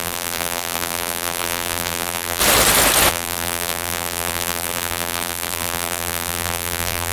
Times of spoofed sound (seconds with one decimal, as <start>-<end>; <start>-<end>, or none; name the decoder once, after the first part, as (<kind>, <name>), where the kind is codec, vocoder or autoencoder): 0.0-2.4 (vocoder, BigVGAN v2); 3.1-7.1

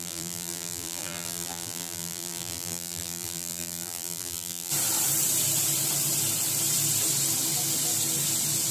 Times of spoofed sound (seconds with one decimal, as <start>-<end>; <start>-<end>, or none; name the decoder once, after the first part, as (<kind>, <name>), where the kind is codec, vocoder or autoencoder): 0.0-4.7 (vocoder, BigVGAN v2)

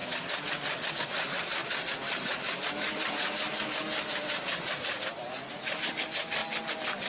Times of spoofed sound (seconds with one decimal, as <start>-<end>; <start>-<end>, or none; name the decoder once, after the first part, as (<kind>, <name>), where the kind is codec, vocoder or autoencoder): 1.6-5.9 (vocoder, BigVGAN v2)